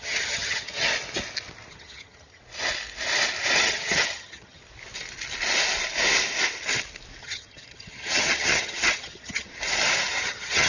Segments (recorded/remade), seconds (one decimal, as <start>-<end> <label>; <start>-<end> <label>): 0.0-0.9 remade; 0.9-1.7 recorded; 1.7-2.4 remade; 2.4-3.6 recorded; 3.6-4.6 remade; 4.6-7.2 recorded; 7.2-9.5 remade; 9.5-10.1 recorded; 10.1-10.7 remade